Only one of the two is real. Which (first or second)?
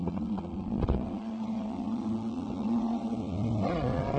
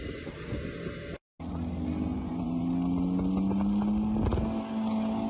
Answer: second